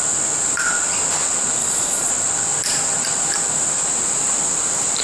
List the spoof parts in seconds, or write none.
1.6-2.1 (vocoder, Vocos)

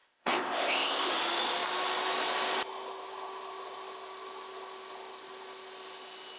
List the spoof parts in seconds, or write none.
0.0-1.1 (codec, ZipCodec)

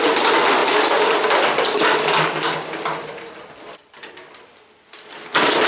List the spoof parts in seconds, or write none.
none

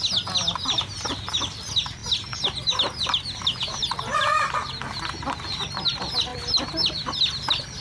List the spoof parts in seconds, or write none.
none

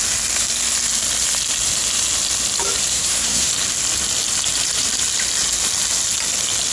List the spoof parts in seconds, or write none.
2.9-3.5 (codec, SNAC)

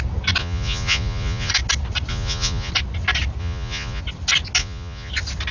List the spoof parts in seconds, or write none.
0.4-1.5 (vocoder, Vocos); 2.1-2.7; 3.4-4.0; 4.6-5.1

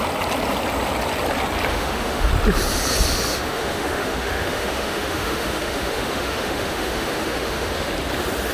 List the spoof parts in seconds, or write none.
1.7-2.3 (autoencoder, DAC-VAE); 3.3-7.9

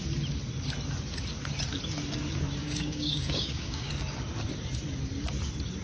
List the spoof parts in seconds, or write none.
2.6-3.9 (codec, DAC)